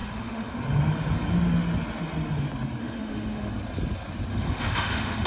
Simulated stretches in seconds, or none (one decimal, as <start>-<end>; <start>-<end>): 0.0-0.5; 2.8-3.5; 4.3-5.3